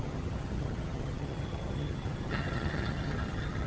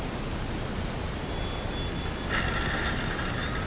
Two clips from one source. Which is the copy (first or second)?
first